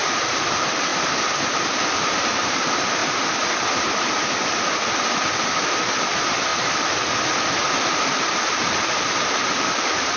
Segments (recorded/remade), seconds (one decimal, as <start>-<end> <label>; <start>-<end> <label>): 0.0-0.9 remade; 0.9-1.4 recorded; 1.4-3.0 remade; 3.0-5.6 recorded; 5.6-6.5 remade; 6.5-7.7 recorded; 7.7-10.2 remade